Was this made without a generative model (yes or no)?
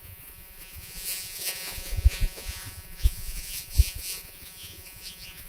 no